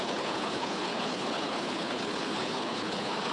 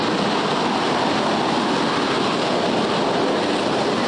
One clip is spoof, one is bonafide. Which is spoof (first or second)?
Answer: first